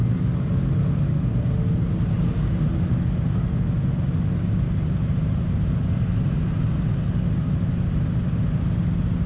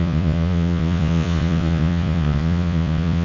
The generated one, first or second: second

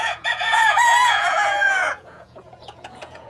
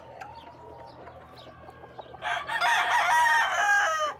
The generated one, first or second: first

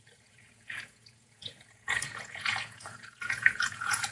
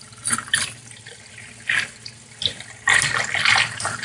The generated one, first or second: first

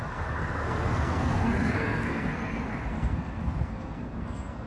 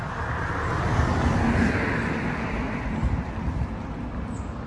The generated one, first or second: first